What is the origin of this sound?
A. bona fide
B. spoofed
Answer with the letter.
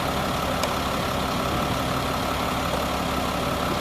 A